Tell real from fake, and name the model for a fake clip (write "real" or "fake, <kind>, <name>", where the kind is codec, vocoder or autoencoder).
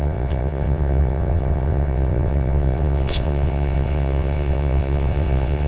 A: fake, vocoder, WaveNeXt